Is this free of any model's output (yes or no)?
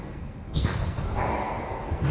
no